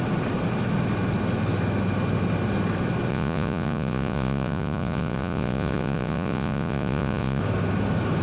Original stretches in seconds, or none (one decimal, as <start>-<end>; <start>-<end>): 0.0-3.1; 7.4-8.2